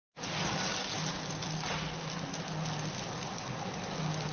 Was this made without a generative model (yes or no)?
yes